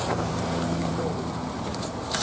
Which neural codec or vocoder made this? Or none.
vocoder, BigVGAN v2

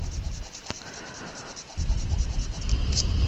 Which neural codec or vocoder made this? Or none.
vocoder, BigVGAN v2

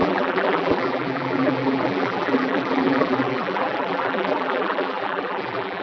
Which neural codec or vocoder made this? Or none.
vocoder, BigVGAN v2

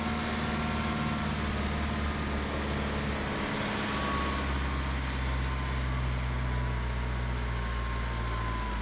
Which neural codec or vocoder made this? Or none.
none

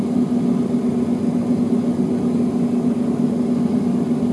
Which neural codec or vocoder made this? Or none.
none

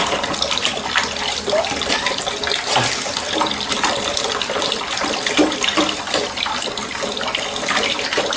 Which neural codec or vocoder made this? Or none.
vocoder, BigVGAN v2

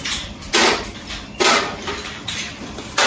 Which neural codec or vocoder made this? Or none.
vocoder, BigVGAN v2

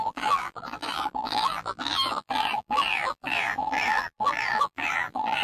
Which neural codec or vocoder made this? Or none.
vocoder, BigVGAN v2